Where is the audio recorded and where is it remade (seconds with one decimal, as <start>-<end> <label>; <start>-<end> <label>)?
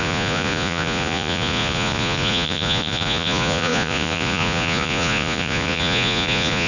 0.0-6.7 remade